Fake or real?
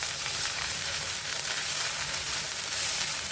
fake